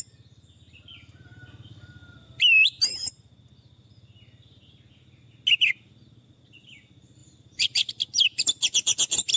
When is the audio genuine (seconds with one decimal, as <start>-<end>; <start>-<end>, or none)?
0.0-7.2; 7.9-9.4